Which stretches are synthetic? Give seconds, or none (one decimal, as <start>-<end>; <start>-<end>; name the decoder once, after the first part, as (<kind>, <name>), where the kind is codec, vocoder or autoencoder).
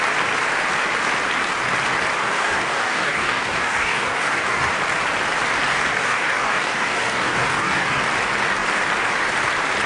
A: 2.2-4.7 (codec, DAC); 5.7-8.1